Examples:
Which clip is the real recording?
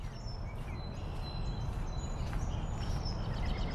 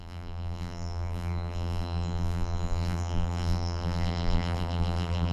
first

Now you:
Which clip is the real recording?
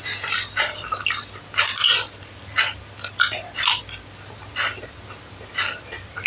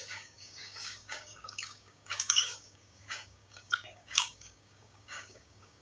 first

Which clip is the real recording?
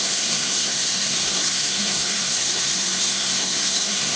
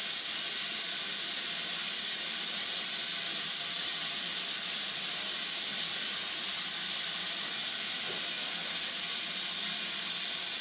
second